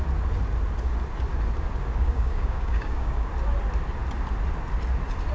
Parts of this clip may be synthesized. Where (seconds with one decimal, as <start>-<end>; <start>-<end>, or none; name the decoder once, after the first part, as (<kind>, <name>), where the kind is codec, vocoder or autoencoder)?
1.9-3.3 (codec, DAC)